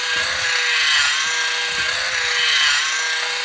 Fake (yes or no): no